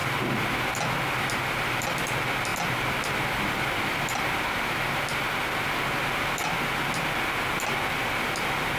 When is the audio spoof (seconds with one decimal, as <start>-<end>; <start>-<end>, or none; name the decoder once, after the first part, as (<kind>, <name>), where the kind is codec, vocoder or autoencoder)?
none